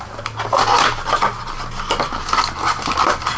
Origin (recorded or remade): recorded